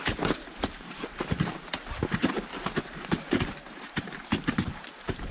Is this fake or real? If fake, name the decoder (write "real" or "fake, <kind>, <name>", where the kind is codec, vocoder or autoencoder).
fake, vocoder, BigVGAN v2